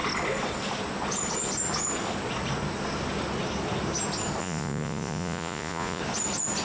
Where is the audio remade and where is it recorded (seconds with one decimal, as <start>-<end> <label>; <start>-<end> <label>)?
0.0-4.4 recorded; 4.4-6.0 remade; 6.0-6.6 recorded